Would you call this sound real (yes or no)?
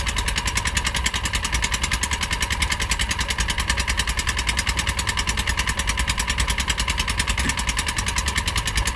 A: yes